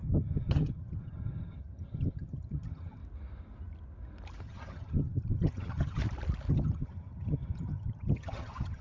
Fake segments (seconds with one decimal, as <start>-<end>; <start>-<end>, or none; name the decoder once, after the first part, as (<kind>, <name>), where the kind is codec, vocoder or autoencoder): 0.0-3.0 (vocoder, HiFi-GAN); 4.4-6.0; 6.5-8.8